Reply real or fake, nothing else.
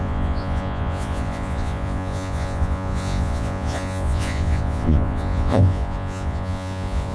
fake